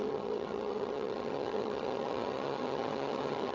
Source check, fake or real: fake